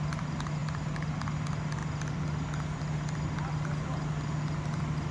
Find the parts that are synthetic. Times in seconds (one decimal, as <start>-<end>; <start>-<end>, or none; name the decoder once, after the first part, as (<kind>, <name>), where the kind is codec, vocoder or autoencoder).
0.6-1.1 (vocoder, BigVGAN v2)